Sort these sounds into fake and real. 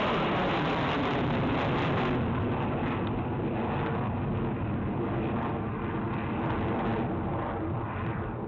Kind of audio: real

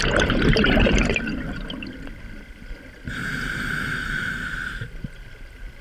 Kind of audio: fake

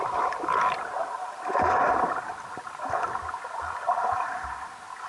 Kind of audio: real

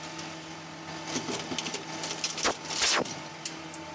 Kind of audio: real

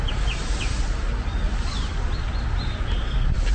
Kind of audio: real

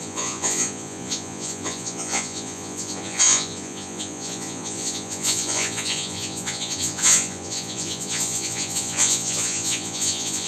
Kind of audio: fake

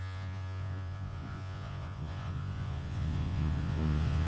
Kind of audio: fake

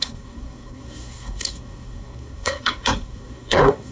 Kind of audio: fake